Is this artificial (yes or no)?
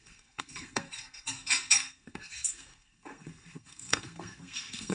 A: yes